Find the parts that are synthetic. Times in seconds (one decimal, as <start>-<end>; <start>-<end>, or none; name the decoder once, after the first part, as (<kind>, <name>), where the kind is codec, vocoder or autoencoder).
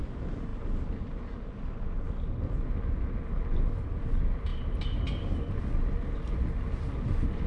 none